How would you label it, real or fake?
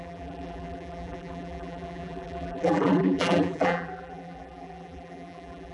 fake